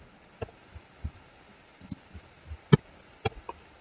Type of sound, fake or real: real